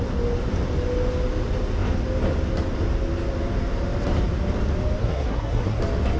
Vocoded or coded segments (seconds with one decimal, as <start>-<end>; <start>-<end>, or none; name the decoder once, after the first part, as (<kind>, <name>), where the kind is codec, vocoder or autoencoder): 5.0-5.8 (codec, SNAC)